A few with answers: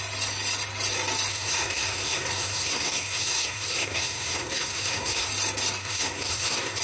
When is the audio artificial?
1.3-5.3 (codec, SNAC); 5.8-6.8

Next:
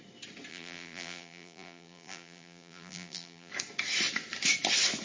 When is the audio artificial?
0.5-3.5 (vocoder, BigVGAN v2)

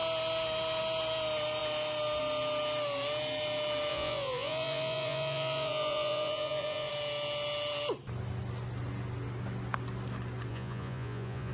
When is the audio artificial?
3.9-6.9 (vocoder, Vocos); 10.5-11.5

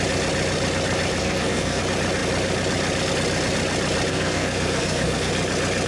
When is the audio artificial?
1.2-1.8 (codec, SNAC); 4.1-5.3

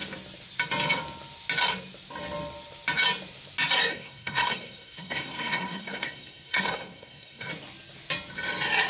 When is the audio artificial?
3.9-7.5 (codec, SNAC)

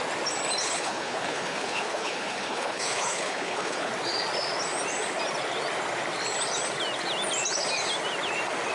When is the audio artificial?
0.6-3.9 (codec, HILCodec)

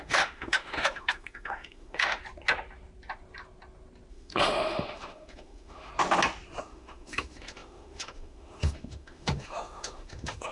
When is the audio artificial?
0.0-2.2 (autoencoder, DAC-VAE); 4.1-5.9; 6.6-10.5

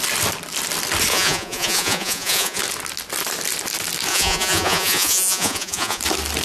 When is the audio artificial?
1.1-2.6 (vocoder, Vocos); 4.1-6.0